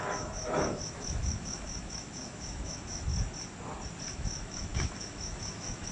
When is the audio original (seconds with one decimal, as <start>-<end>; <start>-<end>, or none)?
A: 3.1-4.1